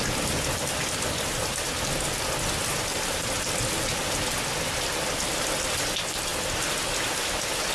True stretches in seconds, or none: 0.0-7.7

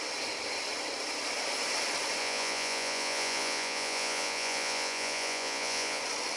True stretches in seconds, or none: 0.0-2.2; 6.0-6.4

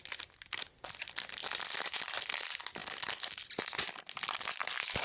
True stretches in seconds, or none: 0.0-5.0

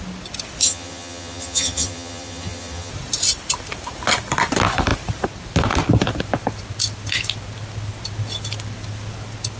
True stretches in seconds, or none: 0.0-0.6; 2.9-9.6